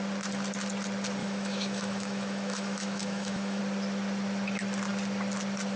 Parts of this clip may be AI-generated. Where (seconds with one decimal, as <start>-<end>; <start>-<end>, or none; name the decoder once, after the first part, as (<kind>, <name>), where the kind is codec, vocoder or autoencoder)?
1.2-3.6 (autoencoder, DAC-VAE)